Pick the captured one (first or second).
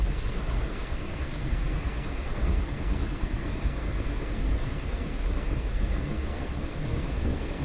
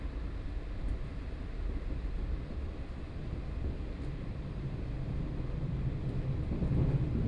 second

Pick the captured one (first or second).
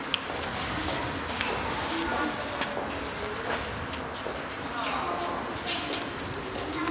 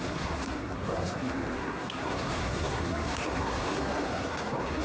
first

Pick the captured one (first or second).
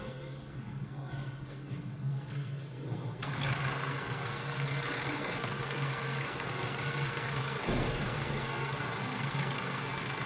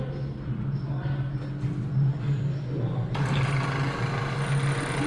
second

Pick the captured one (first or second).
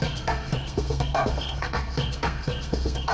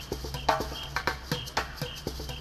second